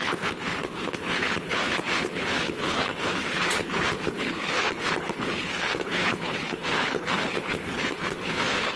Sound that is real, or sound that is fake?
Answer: fake